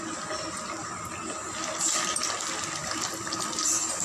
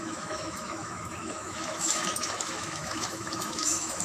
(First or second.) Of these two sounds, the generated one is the second